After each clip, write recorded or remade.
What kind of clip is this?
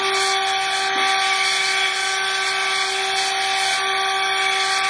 recorded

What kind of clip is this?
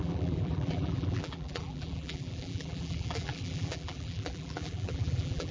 remade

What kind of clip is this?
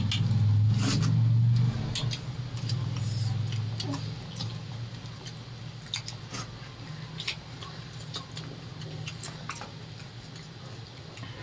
recorded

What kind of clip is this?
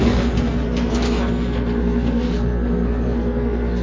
remade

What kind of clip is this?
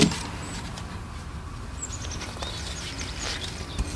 recorded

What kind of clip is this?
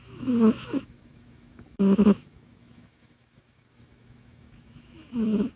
remade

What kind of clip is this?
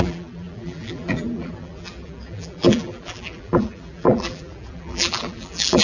remade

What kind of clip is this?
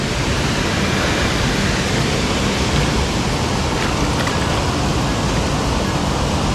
recorded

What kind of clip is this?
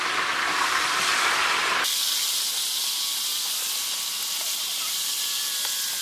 recorded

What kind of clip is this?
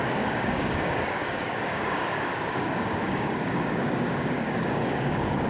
remade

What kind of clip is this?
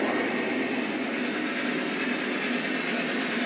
recorded